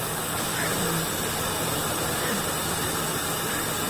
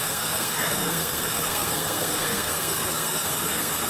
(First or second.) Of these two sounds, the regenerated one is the second